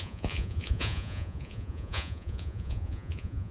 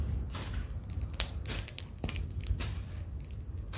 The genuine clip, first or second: second